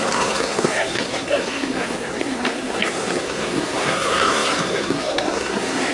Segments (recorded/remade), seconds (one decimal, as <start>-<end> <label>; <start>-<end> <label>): 0.0-5.9 remade